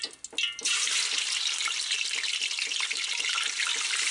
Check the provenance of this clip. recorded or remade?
recorded